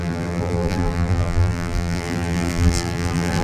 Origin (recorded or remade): remade